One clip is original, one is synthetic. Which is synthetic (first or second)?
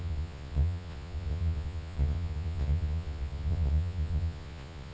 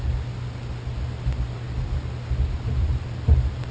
first